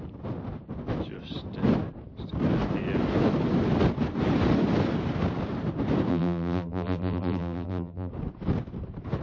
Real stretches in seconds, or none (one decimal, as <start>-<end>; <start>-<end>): 0.0-6.1; 8.1-9.2